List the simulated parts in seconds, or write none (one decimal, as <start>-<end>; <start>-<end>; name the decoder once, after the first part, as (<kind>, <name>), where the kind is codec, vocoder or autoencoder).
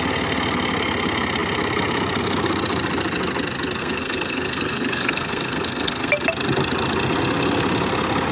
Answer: 3.8-6.1 (codec, SNAC)